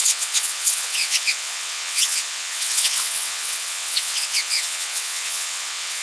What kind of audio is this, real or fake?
fake